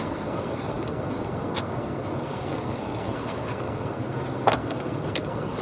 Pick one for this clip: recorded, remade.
remade